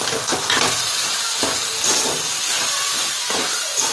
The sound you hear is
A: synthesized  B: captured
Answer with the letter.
B